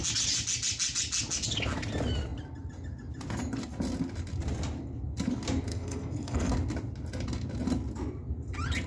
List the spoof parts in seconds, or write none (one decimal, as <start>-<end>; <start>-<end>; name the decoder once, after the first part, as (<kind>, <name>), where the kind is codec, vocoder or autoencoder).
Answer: 5.7-6.5 (codec, SNAC)